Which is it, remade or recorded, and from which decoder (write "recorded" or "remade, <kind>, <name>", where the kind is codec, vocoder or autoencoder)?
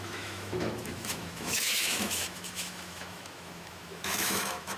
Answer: remade, autoencoder, DAC-VAE